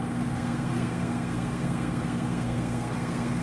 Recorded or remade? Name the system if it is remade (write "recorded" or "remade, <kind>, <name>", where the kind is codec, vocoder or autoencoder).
remade, codec, SNAC